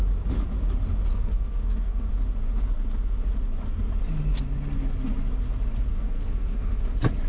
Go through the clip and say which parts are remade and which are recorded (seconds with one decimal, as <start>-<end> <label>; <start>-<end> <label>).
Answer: 0.0-1.1 recorded; 1.1-2.1 remade; 2.1-5.9 recorded; 5.9-6.8 remade; 6.8-7.3 recorded